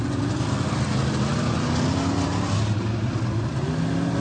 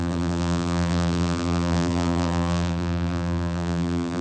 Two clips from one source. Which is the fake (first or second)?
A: second